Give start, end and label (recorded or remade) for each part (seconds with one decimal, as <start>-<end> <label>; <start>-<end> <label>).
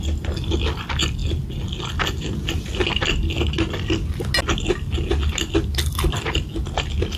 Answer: 0.0-7.2 recorded